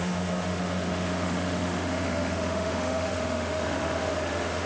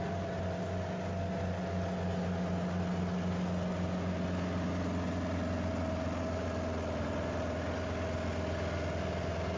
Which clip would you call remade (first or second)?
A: first